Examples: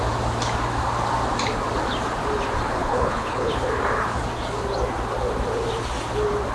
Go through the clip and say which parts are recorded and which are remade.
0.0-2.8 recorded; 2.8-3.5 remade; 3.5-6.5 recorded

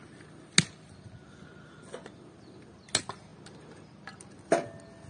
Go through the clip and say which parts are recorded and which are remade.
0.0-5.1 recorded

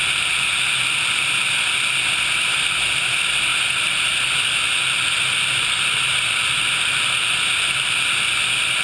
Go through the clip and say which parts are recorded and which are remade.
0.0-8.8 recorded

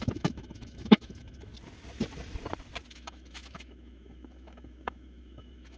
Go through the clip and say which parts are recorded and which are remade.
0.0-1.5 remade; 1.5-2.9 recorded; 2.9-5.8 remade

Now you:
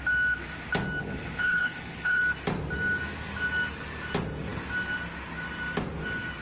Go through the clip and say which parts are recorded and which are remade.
0.0-1.0 recorded; 1.0-2.2 remade; 2.2-6.4 recorded

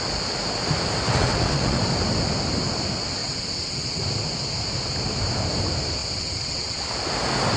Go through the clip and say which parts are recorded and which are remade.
0.0-1.1 recorded; 1.1-1.8 remade; 1.8-3.2 recorded; 3.2-4.0 remade; 4.0-6.0 recorded; 6.0-6.8 remade; 6.8-7.6 recorded